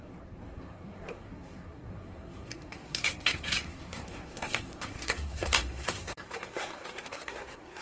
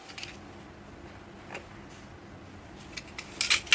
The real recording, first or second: second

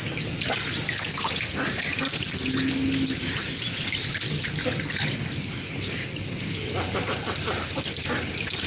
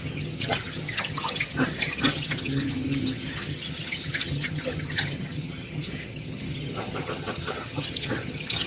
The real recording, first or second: first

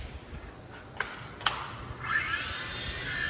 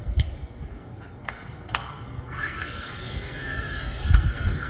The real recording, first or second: first